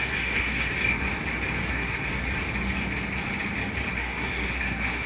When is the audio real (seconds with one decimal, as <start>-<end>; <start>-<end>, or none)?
0.7-1.7; 2.1-3.9